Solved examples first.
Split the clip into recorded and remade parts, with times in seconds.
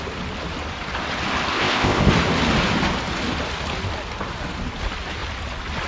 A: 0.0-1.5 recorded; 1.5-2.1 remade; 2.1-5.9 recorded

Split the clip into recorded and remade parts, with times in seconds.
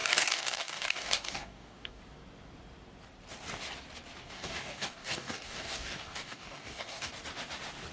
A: 0.0-2.0 remade; 2.0-4.2 recorded; 4.2-7.1 remade; 7.1-7.9 recorded